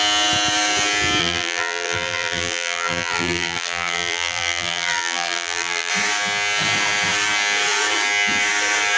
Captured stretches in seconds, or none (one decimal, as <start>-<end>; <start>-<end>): 0.0-1.2; 5.9-9.0